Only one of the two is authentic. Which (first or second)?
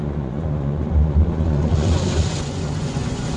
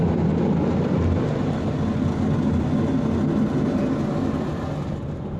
second